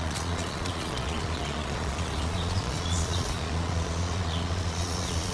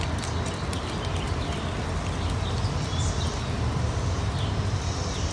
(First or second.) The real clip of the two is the second